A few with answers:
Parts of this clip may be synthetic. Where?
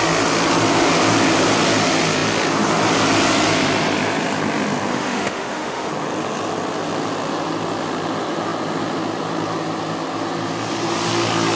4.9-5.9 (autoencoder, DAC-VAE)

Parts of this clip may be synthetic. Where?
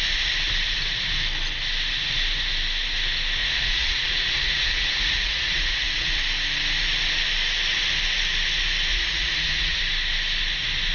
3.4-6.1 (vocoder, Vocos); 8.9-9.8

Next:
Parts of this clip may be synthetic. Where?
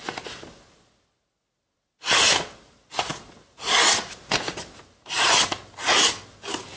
none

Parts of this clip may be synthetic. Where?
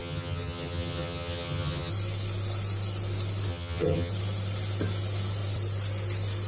0.0-1.9 (vocoder, HiFi-GAN); 3.5-4.1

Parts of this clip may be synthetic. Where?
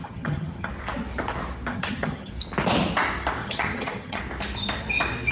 0.0-0.7 (vocoder, HiFi-GAN); 1.7-2.3; 3.4-4.2